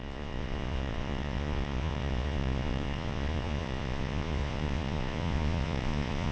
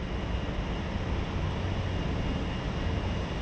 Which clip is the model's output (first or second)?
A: first